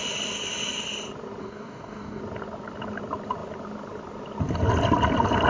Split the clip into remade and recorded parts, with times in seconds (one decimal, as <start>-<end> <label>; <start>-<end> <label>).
0.0-1.4 recorded; 1.4-2.2 remade; 2.2-5.5 recorded